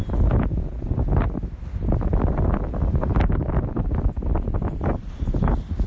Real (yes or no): yes